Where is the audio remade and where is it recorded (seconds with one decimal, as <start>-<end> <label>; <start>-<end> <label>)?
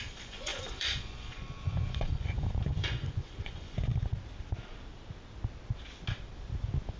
0.0-3.9 remade; 3.9-7.0 recorded